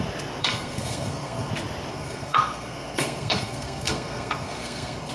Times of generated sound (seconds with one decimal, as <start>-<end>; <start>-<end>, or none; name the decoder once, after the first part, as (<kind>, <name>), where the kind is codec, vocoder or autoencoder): 0.4-1.5 (codec, SNAC); 1.9-5.1